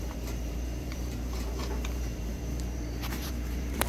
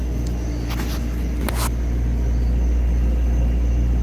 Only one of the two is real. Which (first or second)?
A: second